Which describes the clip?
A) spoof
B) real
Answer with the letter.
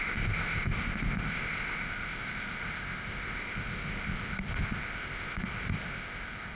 A